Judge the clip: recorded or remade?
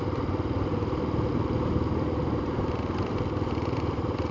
remade